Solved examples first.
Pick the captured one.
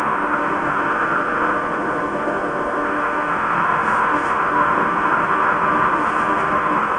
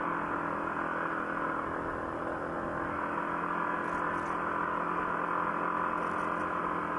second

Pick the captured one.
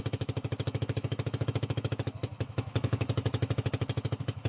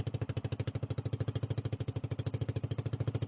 second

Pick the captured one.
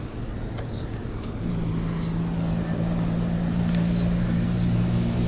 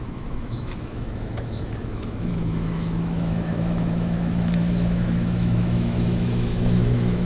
first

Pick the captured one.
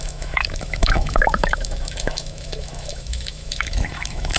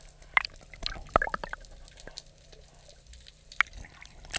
second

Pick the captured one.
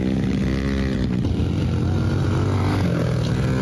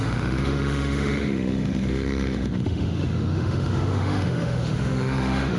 first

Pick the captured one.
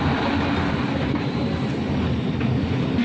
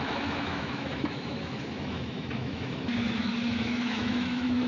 first